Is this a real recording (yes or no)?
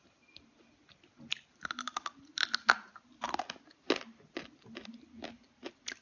yes